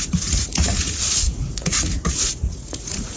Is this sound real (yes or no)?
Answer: no